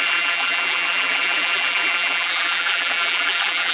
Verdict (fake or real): fake